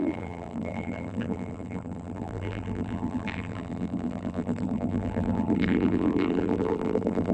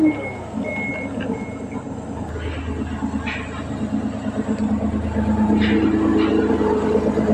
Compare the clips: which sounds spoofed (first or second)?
first